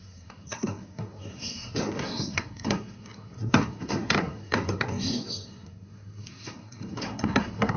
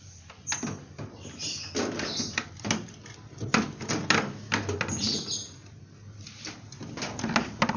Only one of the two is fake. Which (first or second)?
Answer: first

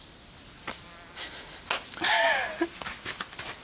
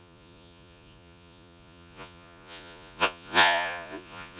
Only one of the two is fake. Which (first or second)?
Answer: second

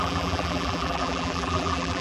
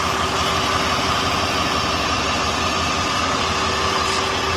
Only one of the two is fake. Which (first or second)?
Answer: first